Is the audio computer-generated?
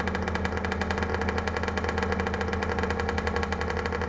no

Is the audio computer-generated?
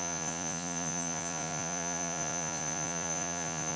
yes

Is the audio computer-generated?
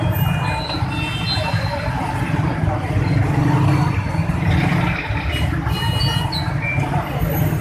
no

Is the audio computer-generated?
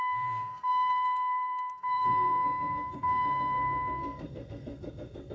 yes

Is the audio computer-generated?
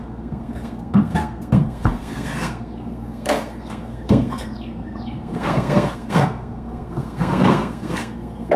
yes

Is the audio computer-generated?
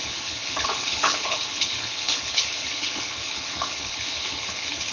yes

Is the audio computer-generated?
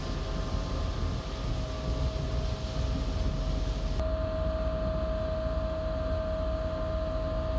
no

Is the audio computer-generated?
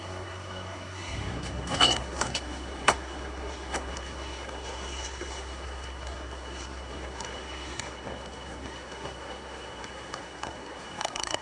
yes